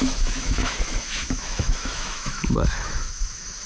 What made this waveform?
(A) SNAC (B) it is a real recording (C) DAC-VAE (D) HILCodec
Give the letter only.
C